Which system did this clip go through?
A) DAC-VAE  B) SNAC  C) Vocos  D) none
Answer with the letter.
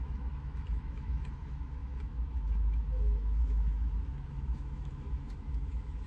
A